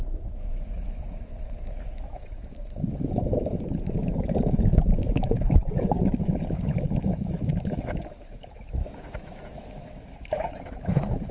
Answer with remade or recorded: remade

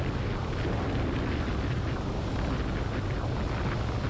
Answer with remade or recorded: recorded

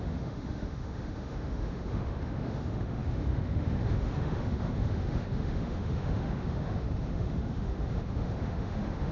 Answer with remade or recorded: remade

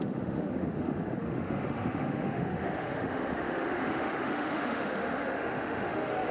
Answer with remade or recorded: remade